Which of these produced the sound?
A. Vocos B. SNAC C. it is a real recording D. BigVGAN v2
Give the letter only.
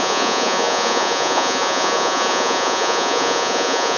A